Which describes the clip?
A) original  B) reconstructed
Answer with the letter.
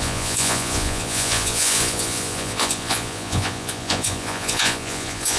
B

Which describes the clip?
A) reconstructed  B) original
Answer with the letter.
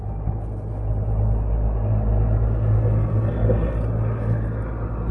B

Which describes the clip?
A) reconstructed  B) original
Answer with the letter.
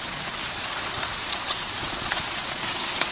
A